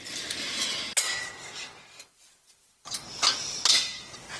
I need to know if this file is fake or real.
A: real